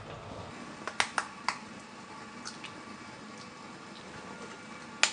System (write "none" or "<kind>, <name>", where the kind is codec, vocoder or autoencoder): none